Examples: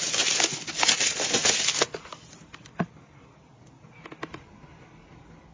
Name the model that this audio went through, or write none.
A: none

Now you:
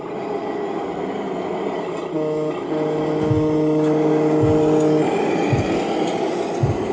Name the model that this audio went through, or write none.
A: none